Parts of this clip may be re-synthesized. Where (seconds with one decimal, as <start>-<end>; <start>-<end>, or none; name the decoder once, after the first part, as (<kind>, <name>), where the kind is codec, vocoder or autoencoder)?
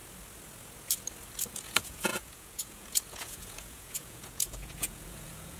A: 1.5-5.6 (vocoder, Vocos)